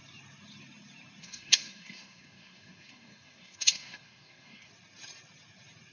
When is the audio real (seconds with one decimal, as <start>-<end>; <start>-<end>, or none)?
0.0-1.2; 4.7-5.9